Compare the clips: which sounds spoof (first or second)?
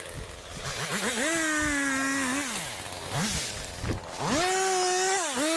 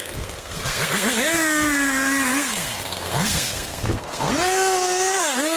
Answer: second